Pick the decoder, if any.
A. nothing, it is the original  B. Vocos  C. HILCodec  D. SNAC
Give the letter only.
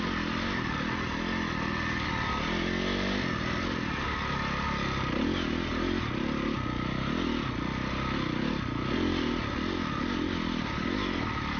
A